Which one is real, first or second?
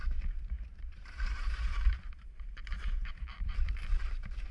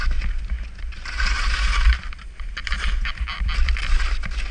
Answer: second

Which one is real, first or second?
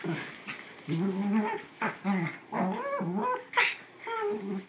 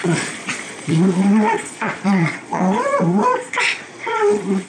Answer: first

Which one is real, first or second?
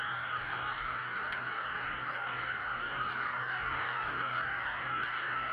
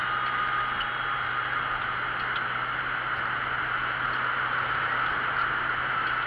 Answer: second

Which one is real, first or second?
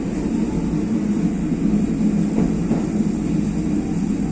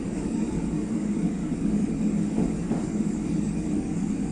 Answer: first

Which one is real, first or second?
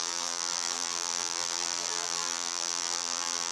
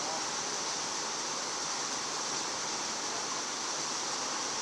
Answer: second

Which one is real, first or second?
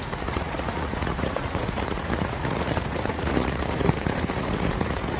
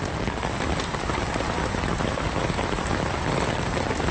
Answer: second